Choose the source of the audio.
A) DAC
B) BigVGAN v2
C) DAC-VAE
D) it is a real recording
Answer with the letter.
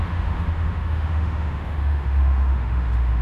C